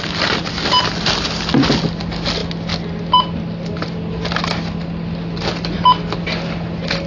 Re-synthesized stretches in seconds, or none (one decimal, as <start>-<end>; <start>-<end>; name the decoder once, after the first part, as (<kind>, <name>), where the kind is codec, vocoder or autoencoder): none